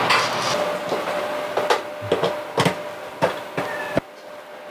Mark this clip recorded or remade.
recorded